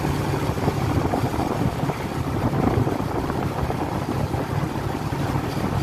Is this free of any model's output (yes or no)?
no